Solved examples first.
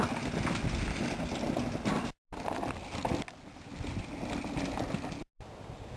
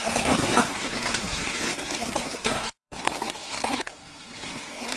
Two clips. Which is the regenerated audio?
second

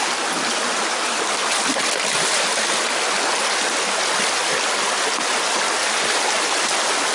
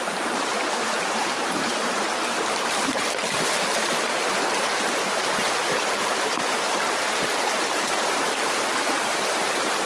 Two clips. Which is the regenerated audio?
second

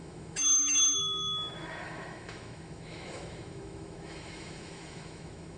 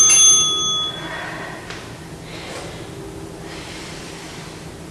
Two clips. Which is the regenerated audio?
first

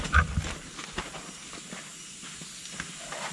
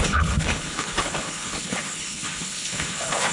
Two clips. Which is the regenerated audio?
second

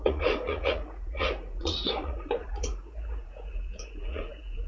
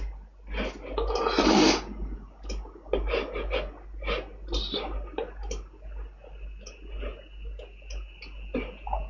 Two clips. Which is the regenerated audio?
first